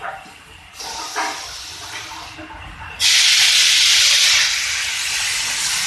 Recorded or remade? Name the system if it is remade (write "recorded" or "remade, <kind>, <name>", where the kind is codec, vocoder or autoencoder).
recorded